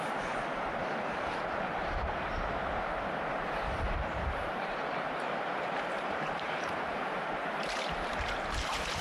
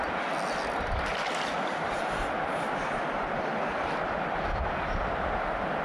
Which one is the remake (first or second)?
first